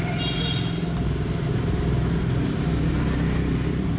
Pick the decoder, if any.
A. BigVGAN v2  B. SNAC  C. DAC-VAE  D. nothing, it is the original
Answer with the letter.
D